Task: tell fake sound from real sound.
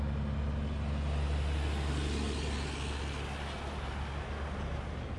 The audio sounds real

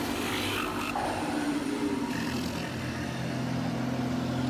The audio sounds real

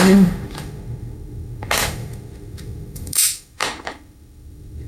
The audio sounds fake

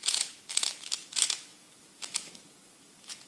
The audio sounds fake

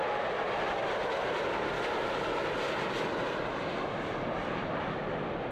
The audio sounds real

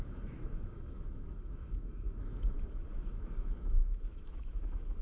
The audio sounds fake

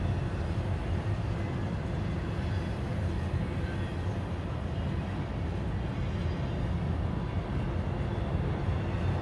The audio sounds real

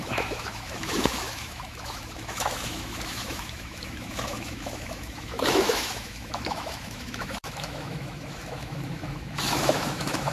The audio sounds fake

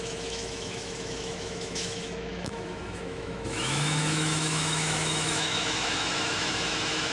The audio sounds fake